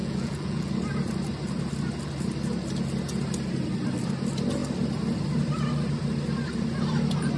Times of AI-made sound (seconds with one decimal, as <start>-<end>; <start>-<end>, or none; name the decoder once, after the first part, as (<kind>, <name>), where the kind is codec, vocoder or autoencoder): 0.0-0.7 (vocoder, Vocos)